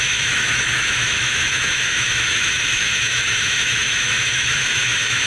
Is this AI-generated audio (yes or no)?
yes